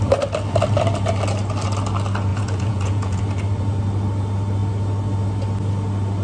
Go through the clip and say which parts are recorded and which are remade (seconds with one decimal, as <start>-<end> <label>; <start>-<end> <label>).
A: 0.0-2.3 recorded; 2.3-3.2 remade; 3.2-6.2 recorded